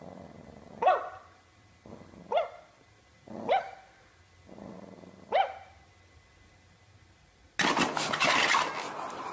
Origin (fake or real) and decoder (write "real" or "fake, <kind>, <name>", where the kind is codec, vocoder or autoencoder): real